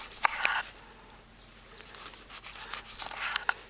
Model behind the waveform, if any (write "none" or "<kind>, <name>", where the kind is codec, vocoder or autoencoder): none